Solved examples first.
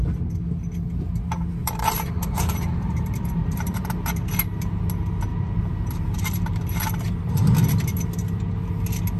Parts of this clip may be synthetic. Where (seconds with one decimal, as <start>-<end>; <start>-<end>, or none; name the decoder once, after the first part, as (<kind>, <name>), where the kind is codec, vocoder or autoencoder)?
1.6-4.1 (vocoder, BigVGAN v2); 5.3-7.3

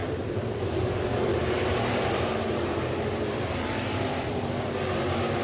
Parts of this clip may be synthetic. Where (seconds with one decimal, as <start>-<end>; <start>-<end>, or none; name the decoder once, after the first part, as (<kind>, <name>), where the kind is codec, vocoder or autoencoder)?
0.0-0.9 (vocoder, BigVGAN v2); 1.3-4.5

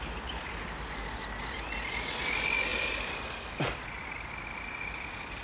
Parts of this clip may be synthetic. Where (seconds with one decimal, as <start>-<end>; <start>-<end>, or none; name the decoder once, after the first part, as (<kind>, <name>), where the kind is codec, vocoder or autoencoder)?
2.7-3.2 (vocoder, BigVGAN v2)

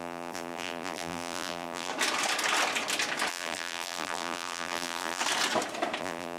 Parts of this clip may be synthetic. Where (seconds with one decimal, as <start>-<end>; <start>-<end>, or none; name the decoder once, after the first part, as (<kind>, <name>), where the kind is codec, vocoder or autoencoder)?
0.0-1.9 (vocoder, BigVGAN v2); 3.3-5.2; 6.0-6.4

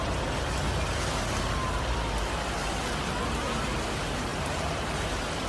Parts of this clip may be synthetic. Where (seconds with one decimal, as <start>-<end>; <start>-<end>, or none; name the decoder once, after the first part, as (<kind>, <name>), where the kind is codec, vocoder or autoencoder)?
4.3-5.5 (vocoder, BigVGAN v2)

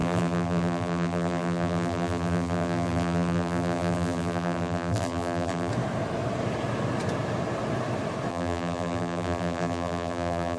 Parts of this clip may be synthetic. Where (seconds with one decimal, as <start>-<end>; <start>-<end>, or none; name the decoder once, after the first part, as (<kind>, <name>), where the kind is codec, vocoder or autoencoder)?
0.0-5.7 (vocoder, BigVGAN v2); 8.3-10.6

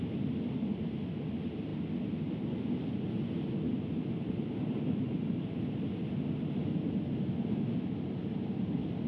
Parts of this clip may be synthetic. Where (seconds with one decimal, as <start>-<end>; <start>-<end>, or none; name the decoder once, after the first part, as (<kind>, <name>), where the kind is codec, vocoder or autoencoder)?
none